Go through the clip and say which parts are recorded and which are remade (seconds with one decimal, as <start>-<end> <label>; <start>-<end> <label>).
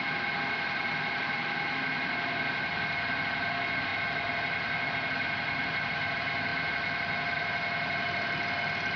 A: 0.0-9.0 recorded